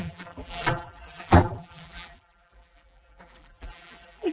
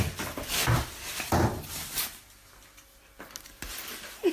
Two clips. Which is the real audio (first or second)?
second